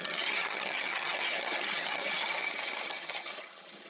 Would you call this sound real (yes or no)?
no